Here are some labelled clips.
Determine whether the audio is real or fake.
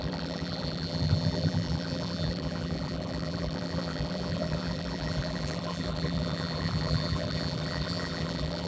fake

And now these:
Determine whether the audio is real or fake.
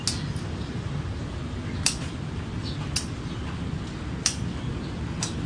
real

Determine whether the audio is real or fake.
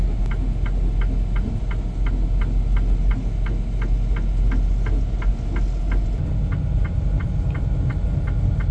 real